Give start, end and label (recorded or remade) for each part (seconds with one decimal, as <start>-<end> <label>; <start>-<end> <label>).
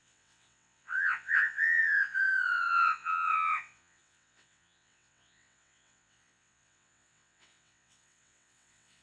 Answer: 0.0-9.0 remade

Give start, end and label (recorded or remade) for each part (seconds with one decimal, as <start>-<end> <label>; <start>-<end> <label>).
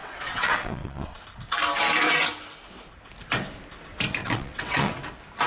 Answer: 0.0-1.2 remade; 1.2-4.2 recorded; 4.2-4.9 remade; 4.9-5.5 recorded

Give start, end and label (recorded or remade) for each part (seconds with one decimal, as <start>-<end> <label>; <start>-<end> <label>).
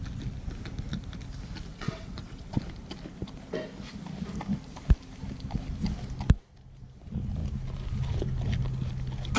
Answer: 0.0-1.7 recorded; 1.7-2.6 remade; 2.6-9.4 recorded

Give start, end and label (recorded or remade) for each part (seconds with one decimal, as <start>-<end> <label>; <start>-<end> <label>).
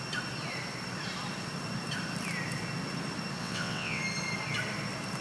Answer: 0.0-3.4 recorded; 3.4-4.0 remade; 4.0-5.2 recorded